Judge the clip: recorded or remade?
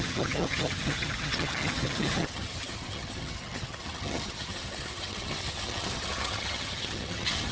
remade